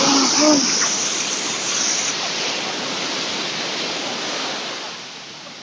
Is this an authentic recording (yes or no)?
yes